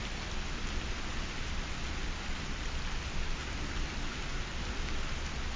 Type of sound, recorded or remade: recorded